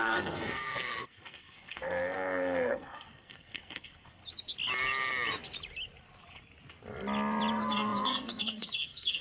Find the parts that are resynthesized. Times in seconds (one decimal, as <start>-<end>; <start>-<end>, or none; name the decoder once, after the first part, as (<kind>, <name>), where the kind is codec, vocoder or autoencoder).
0.0-4.2 (codec, SNAC); 7.5-9.2